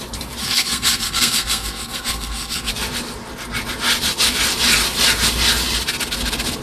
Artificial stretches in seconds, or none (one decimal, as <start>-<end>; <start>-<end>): 0.4-2.7

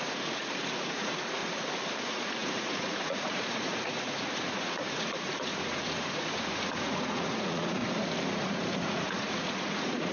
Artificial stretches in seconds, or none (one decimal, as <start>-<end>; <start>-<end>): 0.0-1.4; 2.0-7.8; 8.3-10.1

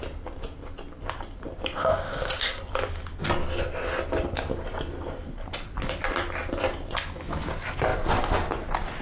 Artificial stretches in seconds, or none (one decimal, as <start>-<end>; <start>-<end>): 1.8-2.6

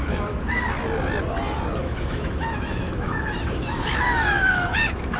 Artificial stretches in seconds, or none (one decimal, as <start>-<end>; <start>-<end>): 0.0-0.6; 1.8-5.2

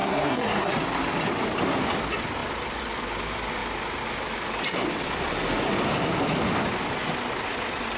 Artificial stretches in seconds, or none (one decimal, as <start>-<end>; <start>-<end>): 0.0-0.7